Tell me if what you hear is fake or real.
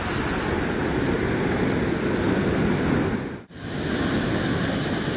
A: real